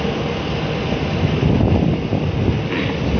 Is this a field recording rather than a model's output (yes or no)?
yes